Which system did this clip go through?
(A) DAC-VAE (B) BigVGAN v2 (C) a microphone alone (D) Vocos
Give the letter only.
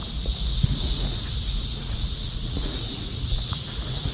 D